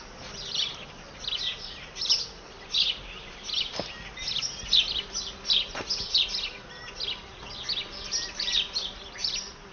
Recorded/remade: recorded